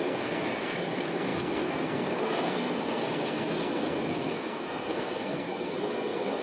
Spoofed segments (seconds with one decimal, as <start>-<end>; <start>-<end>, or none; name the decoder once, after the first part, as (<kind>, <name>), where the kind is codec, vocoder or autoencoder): 0.0-6.4 (codec, SNAC)